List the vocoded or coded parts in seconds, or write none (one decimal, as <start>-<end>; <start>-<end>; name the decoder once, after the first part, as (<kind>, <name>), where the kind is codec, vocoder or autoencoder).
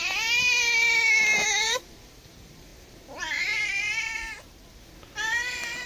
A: 0.0-5.9 (vocoder, BigVGAN v2)